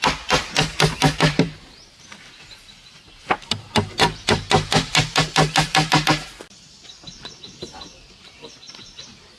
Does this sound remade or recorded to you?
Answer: remade